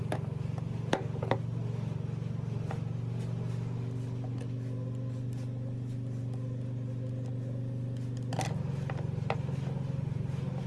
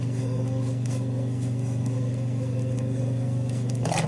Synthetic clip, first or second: second